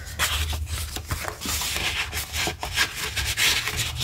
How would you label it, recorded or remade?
recorded